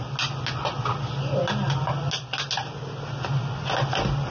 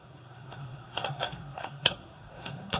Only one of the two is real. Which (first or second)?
first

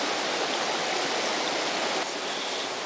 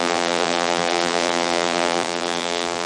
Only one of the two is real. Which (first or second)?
first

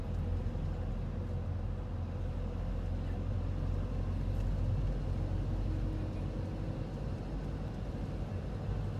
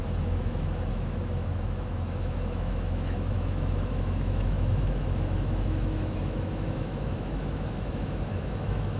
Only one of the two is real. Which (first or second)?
first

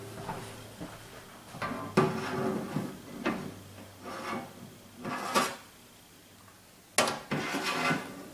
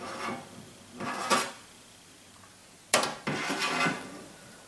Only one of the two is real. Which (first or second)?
first